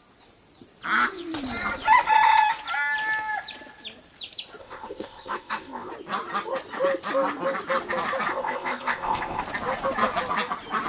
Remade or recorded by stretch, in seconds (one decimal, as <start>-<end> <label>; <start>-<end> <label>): 0.0-4.6 recorded; 4.6-5.9 remade; 5.9-8.3 recorded; 8.3-9.4 remade; 9.4-10.9 recorded